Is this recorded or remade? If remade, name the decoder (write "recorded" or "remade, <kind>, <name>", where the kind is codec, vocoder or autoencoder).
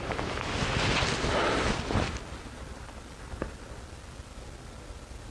recorded